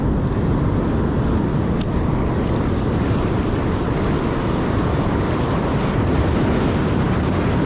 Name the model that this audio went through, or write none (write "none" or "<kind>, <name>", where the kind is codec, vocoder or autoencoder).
none